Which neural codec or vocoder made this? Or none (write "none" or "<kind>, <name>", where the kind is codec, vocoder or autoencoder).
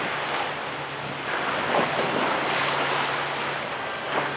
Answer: none